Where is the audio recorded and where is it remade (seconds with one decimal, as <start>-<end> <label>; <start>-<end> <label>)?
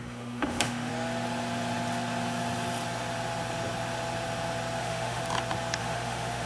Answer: 0.0-0.9 remade; 0.9-4.8 recorded; 4.8-5.2 remade; 5.2-5.8 recorded; 5.8-6.5 remade